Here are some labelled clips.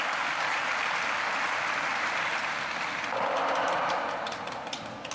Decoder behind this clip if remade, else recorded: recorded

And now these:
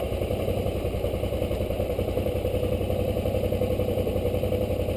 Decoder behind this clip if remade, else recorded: remade, vocoder, BigVGAN v2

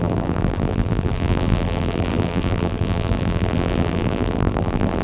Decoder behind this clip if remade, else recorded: remade, vocoder, BigVGAN v2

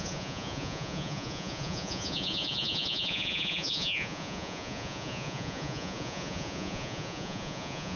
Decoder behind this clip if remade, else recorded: remade, vocoder, Vocos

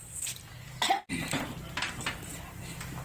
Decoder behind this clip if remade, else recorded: recorded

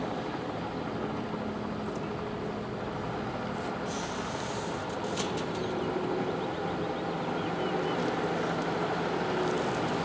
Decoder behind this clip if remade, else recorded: recorded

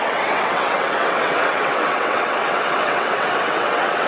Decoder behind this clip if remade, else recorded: remade, vocoder, WaveNeXt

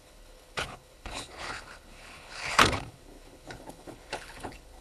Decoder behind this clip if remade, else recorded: remade, codec, HILCodec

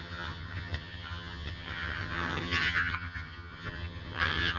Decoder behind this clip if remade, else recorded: remade, vocoder, HiFi-GAN